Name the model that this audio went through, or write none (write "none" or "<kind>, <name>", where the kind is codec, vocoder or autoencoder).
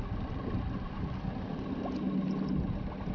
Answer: none